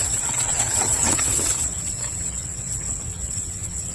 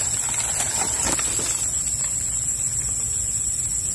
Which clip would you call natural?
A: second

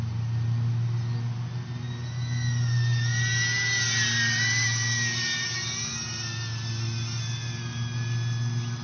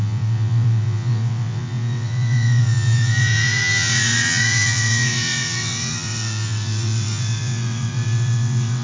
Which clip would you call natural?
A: first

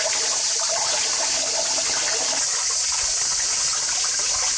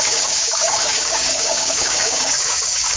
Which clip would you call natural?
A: first